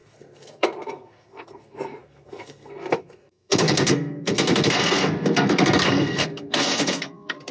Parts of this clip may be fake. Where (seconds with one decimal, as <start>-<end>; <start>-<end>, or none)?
0.0-7.5